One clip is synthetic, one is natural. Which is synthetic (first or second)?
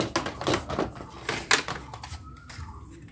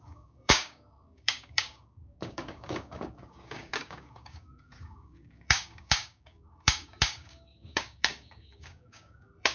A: second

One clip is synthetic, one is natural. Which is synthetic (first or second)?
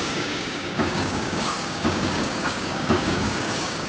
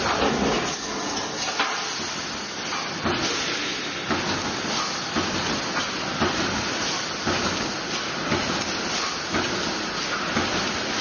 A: first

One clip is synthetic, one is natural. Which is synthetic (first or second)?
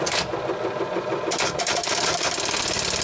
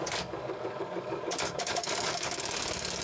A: second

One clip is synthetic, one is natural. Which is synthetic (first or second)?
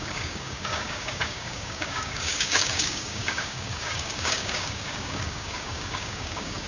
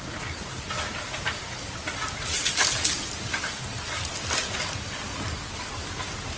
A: first